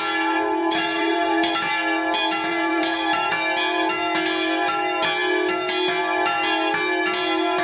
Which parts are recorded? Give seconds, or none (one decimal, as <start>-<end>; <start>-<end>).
0.0-0.6; 1.7-2.5; 3.3-7.6